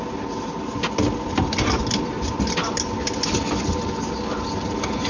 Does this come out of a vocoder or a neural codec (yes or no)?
no